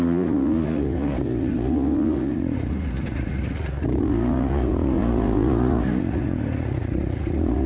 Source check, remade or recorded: remade